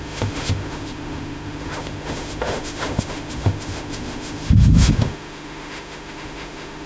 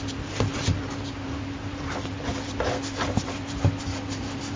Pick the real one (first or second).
second